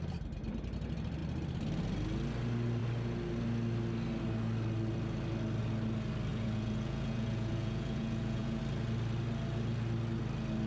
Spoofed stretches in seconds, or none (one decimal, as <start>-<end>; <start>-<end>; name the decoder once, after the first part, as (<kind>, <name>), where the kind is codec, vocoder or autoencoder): 6.3-8.6 (vocoder, Vocos)